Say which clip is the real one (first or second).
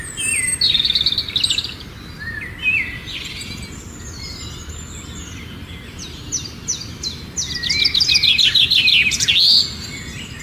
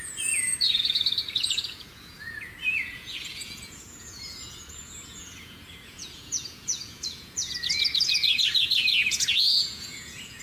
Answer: first